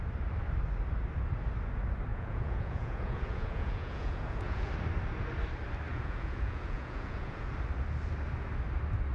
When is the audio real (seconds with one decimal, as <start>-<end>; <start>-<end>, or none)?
0.0-2.1; 4.7-5.9; 7.5-9.1